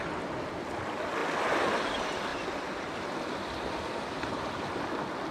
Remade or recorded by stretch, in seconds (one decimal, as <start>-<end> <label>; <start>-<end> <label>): 0.0-2.3 recorded; 2.3-4.4 remade; 4.4-5.3 recorded